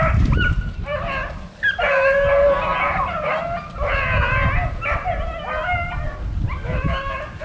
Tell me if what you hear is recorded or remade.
recorded